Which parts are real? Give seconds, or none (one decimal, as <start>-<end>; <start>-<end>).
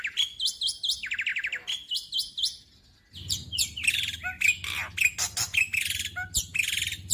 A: 0.0-7.1